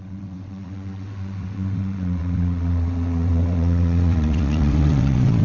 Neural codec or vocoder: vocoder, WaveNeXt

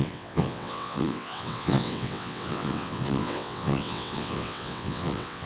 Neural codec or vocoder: vocoder, WaveNeXt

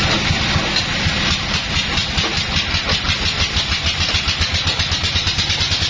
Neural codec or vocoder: none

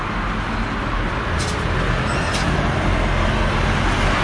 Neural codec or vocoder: none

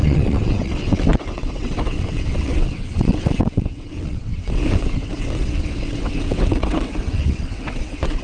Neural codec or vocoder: vocoder, WaveNeXt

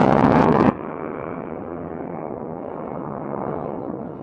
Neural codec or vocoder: vocoder, WaveNeXt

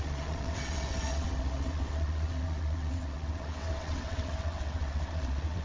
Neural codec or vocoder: vocoder, WaveNeXt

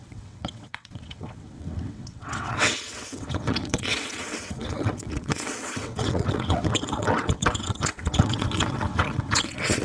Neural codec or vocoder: vocoder, WaveNeXt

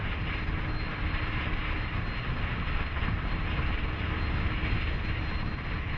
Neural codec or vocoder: none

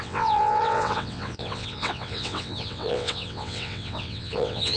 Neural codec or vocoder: vocoder, WaveNeXt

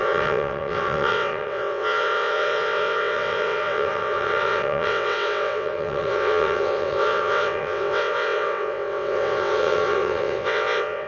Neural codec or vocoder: vocoder, WaveNeXt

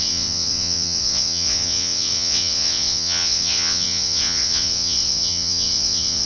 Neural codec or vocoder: vocoder, WaveNeXt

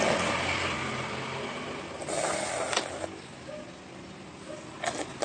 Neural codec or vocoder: none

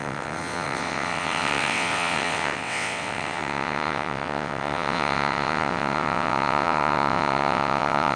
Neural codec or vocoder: vocoder, WaveNeXt